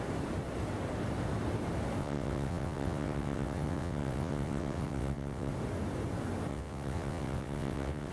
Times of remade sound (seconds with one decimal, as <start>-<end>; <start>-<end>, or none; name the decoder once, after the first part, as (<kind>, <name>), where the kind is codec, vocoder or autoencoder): 2.0-5.5 (vocoder, WaveNeXt); 6.5-8.1